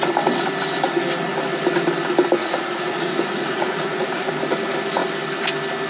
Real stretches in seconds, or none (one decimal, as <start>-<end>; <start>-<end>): 0.0-2.4; 4.4-5.9